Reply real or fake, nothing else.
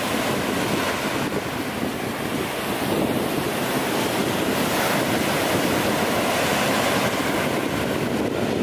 real